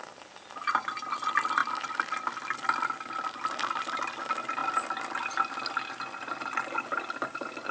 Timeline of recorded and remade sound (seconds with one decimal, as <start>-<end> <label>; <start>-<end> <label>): 0.0-7.7 recorded

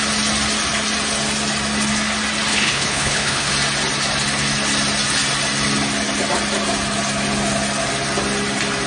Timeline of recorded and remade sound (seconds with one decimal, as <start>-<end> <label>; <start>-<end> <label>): 0.0-2.5 recorded; 2.5-3.5 remade; 3.5-8.9 recorded